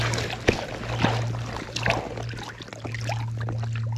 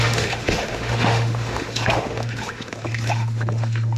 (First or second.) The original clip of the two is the first